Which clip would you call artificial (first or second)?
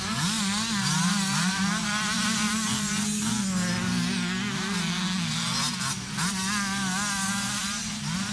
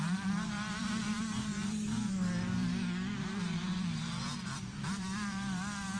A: second